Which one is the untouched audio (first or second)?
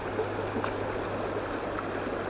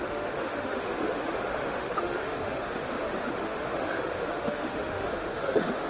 first